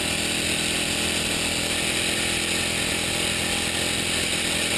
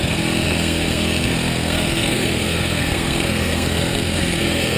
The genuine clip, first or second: first